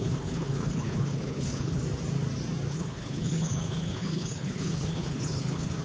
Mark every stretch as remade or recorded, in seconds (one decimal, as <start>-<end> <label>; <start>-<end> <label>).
0.0-1.8 remade; 1.8-2.7 recorded; 2.7-5.8 remade